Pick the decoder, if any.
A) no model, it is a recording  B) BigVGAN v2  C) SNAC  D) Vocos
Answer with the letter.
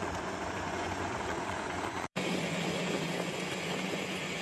D